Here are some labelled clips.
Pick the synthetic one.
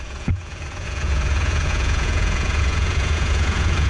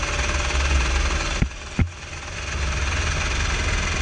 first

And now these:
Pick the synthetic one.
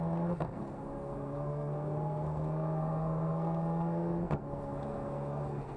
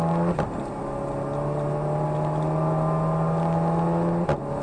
first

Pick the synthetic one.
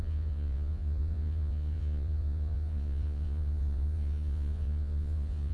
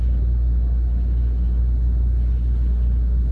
first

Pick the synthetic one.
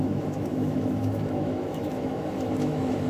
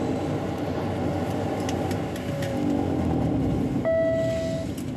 first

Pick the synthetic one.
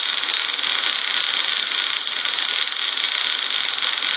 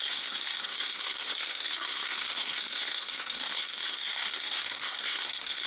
second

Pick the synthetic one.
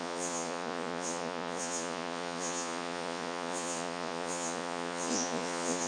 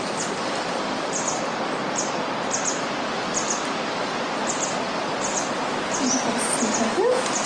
first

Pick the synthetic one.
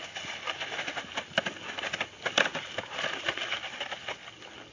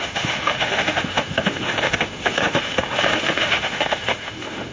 second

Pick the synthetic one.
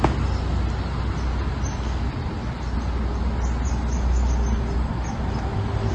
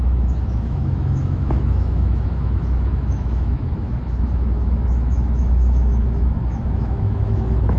second